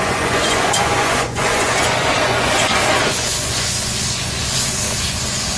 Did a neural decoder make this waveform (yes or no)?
yes